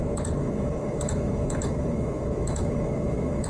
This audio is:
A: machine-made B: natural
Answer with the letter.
A